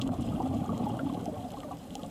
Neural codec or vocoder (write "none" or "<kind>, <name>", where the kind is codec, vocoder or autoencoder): vocoder, BigVGAN v2